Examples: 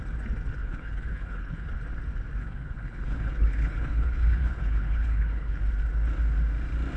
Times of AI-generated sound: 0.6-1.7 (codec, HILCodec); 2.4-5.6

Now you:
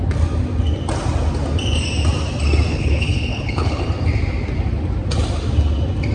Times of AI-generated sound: 2.7-3.9 (codec, HILCodec)

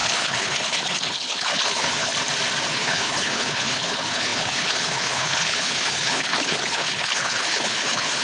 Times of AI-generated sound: 0.0-2.1 (codec, HILCodec); 2.7-8.2

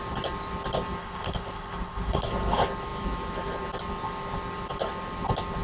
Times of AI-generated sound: 1.0-2.3 (codec, HILCodec)